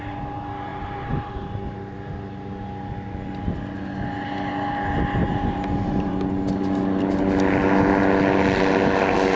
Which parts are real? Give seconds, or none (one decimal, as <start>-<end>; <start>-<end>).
0.0-0.7; 1.3-5.2; 6.1-9.4